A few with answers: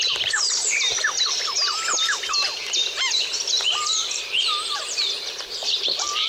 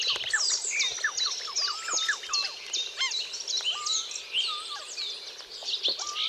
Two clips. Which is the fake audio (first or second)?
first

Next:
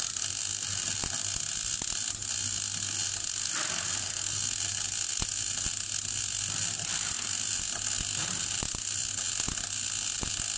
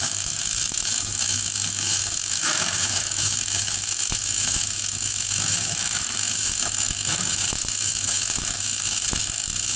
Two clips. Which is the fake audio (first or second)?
second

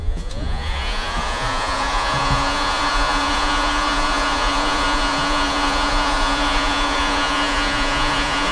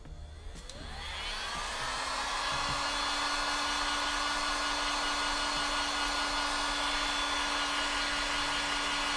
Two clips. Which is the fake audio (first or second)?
first